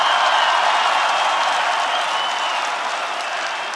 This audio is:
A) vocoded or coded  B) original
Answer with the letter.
B